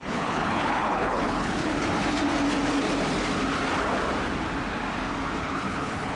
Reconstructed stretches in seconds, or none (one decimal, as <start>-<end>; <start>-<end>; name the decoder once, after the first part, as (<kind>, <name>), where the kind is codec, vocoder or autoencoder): 0.0-1.7 (codec, HILCodec); 5.4-6.2